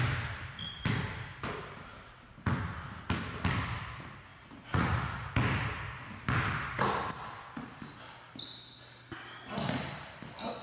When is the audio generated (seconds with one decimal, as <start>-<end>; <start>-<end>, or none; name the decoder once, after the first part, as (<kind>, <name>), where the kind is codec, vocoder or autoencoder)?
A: 4.3-5.3 (vocoder, Vocos)

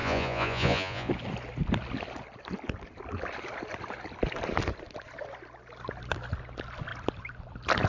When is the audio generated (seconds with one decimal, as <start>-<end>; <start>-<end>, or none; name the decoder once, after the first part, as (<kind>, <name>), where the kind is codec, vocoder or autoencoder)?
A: 0.0-1.1 (vocoder, Vocos)

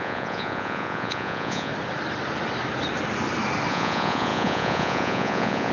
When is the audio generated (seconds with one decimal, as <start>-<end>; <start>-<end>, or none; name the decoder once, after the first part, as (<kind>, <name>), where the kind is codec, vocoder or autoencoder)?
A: 0.0-1.7 (vocoder, Vocos); 3.7-5.7

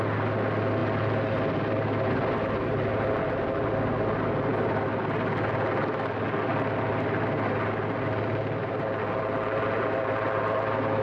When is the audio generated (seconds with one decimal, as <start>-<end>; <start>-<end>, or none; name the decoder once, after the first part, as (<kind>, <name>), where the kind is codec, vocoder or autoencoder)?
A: none

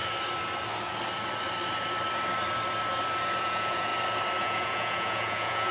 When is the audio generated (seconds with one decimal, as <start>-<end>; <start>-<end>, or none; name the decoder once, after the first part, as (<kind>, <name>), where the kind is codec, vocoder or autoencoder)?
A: 3.4-3.9 (vocoder, Vocos); 4.4-5.7